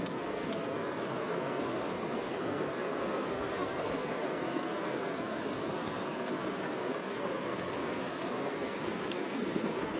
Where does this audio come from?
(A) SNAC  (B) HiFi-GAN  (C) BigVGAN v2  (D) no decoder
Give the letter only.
A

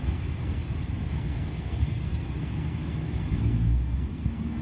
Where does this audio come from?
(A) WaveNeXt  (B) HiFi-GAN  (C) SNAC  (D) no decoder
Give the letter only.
C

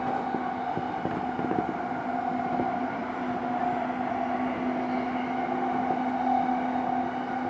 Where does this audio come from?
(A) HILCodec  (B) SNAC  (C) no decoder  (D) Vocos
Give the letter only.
C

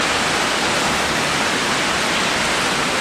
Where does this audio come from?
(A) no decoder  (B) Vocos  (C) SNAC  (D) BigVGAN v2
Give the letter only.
A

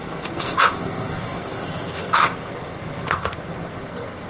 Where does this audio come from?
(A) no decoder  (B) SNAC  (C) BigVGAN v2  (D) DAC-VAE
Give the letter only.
B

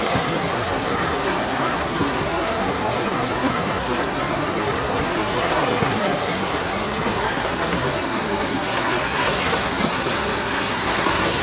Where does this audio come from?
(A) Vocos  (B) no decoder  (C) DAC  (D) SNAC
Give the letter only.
D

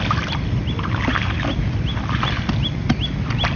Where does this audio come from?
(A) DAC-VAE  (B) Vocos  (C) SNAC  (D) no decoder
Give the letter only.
D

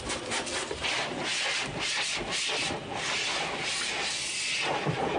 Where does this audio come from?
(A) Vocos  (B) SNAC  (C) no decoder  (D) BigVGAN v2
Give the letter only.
C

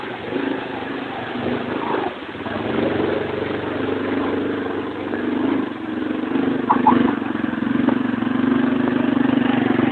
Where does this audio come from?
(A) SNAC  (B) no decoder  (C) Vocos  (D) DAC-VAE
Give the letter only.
B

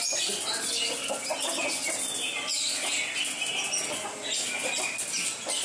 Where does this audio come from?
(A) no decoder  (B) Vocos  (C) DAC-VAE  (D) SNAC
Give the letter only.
A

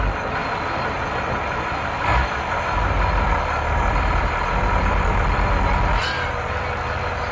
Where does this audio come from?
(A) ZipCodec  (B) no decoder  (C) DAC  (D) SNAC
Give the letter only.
B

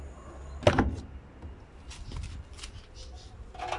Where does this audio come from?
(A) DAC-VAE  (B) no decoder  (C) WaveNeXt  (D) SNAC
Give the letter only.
B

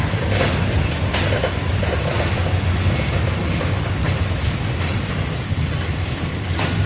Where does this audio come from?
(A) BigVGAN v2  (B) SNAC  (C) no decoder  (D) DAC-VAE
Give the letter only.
C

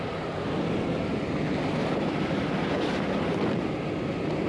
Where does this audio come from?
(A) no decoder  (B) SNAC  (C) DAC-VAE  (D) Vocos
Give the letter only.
A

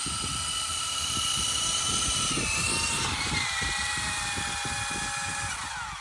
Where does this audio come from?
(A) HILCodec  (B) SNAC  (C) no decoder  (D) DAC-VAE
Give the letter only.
C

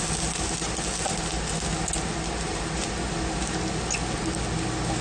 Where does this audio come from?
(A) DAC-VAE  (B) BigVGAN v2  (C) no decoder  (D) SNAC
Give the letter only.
C